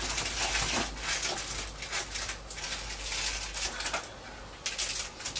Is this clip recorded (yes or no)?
yes